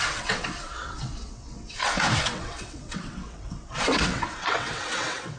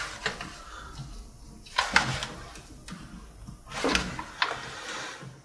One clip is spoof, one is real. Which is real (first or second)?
second